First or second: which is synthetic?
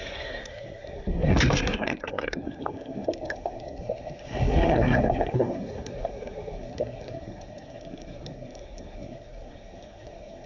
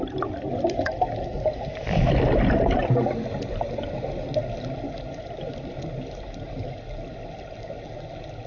first